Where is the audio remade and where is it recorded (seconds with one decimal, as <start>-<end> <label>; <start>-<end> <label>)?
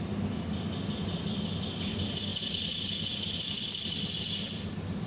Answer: 0.0-5.1 recorded